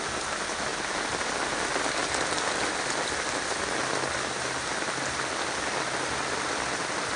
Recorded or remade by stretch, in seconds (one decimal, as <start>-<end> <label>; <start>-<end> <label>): 0.0-7.2 recorded